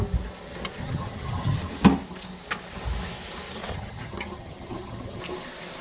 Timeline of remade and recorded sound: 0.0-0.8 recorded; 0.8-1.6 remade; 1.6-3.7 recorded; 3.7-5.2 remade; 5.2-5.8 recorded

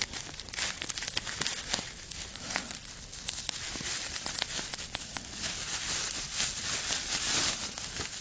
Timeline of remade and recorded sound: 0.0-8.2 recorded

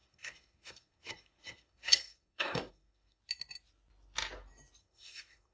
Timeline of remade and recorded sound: 0.0-3.2 remade; 3.2-4.8 recorded; 4.8-5.5 remade